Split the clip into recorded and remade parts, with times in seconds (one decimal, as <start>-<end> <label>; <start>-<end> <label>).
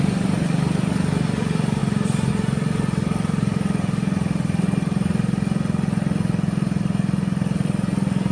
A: 0.0-8.3 recorded